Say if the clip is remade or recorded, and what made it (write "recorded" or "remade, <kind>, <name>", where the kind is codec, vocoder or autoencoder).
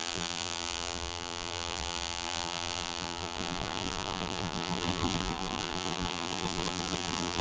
remade, vocoder, BigVGAN v2